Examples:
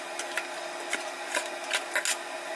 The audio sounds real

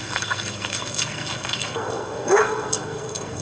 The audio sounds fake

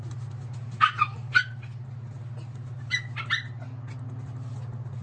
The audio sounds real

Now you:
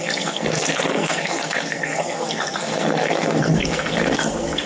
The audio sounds fake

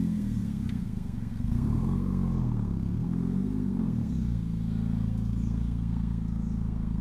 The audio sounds fake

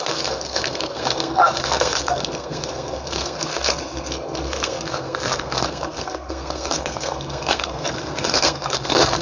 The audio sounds fake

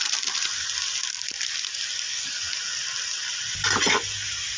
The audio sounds real